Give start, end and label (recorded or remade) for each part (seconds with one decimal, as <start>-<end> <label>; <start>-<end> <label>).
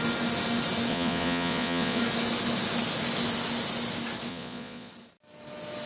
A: 0.0-0.9 recorded; 0.9-2.0 remade; 2.0-4.3 recorded; 4.3-4.9 remade; 4.9-5.9 recorded